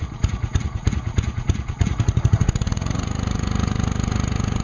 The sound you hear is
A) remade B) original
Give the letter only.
A